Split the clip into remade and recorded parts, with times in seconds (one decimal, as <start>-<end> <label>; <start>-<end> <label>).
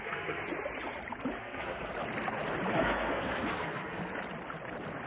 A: 0.0-0.4 remade; 0.4-1.4 recorded; 1.4-1.9 remade; 1.9-2.8 recorded; 2.8-4.0 remade; 4.0-5.1 recorded